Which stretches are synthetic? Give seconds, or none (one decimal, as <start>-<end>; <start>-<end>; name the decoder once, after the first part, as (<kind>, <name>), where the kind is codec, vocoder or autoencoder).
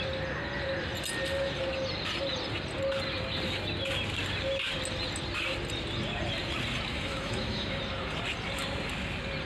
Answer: 6.9-7.8 (autoencoder, DAC-VAE)